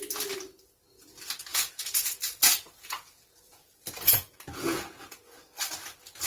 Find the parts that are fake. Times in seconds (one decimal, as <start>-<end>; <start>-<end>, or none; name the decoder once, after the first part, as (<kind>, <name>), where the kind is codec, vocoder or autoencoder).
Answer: 1.5-5.3 (vocoder, Vocos)